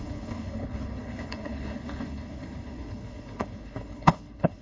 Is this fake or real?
fake